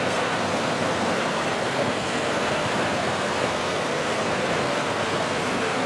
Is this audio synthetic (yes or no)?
yes